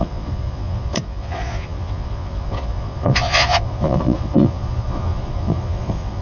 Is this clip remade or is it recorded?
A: remade